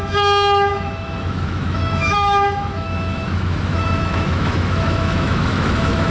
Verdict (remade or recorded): remade